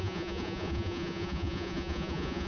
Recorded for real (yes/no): no